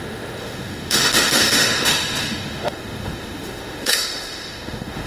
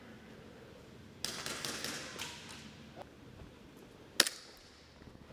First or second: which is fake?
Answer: first